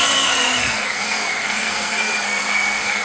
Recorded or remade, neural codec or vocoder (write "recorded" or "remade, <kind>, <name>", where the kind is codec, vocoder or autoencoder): remade, codec, SNAC